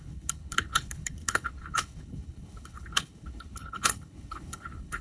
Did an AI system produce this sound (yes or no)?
yes